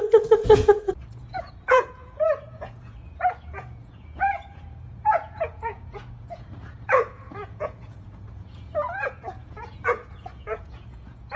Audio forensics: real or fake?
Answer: fake